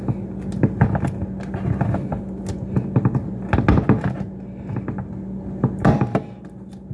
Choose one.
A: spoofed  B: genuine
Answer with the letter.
B